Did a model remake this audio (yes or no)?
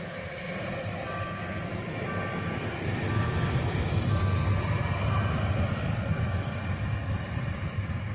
no